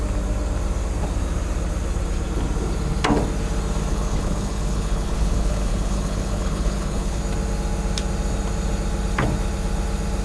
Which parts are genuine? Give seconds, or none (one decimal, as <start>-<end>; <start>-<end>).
0.0-3.9; 7.2-10.2